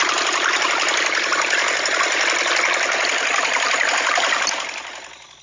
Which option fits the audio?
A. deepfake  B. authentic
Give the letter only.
B